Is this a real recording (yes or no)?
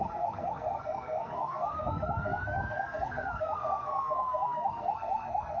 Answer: no